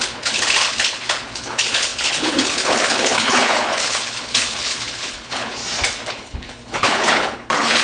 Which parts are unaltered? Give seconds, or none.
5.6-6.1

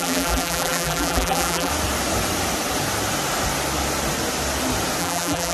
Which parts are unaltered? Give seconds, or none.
1.7-5.0

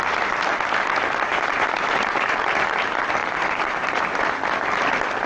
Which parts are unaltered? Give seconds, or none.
0.0-1.3; 2.4-3.2; 4.0-5.3